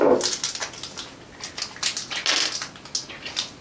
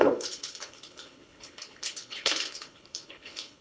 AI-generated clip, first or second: second